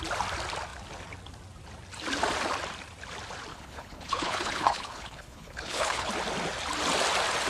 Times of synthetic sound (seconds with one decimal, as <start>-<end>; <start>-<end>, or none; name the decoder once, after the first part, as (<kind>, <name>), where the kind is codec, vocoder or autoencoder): 3.5-6.1 (codec, HILCodec)